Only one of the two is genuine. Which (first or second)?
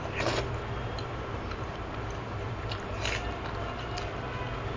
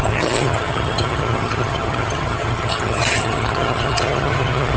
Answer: first